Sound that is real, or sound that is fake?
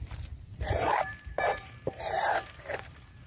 fake